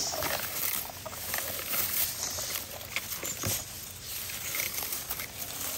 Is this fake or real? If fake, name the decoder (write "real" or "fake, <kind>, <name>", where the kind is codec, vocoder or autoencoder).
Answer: fake, vocoder, BigVGAN v2